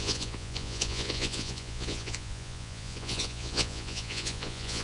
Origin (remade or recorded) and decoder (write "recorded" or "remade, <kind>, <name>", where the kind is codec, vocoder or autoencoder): remade, vocoder, Vocos